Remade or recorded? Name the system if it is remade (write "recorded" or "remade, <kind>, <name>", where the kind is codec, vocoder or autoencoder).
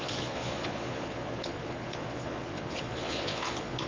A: remade, vocoder, Vocos